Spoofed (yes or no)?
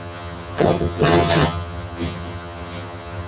yes